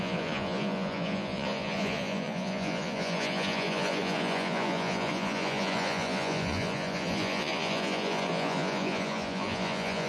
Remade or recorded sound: remade